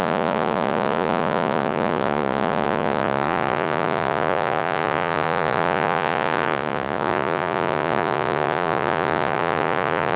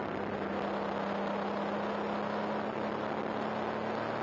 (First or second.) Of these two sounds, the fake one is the first